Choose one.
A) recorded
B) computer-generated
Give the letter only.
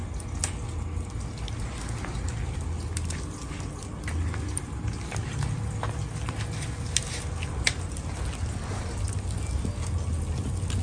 A